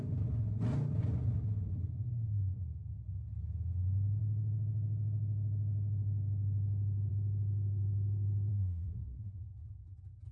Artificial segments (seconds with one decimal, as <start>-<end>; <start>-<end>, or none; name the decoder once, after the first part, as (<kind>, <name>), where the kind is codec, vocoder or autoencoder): 8.5-9.4 (codec, SNAC)